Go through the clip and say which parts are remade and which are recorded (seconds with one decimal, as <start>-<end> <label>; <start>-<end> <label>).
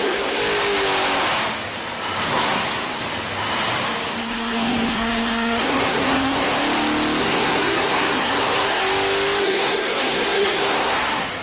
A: 0.0-0.4 remade; 0.4-2.3 recorded; 2.3-3.0 remade; 3.0-4.2 recorded; 4.2-6.5 remade; 6.5-7.2 recorded; 7.2-8.8 remade; 8.8-9.4 recorded; 9.4-11.4 remade